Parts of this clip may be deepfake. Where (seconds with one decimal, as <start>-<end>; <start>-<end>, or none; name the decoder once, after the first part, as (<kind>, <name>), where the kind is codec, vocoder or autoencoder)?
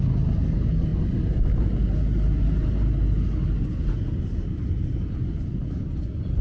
none